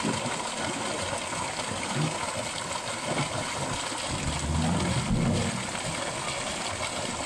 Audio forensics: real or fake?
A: real